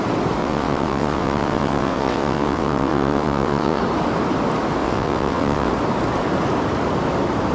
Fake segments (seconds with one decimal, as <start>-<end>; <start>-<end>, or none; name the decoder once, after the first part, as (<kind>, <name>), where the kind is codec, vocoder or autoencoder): 0.4-3.8 (vocoder, WaveNeXt); 4.8-5.7